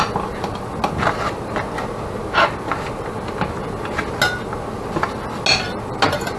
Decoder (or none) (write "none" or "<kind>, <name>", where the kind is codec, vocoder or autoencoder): none